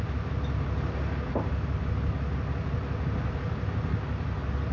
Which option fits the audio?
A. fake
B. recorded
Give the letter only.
B